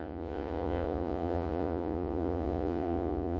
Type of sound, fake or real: fake